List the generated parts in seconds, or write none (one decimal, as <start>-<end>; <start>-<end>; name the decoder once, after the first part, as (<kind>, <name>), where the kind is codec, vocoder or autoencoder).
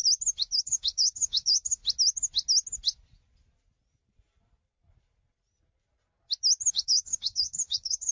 0.6-1.8 (codec, DAC); 6.7-8.1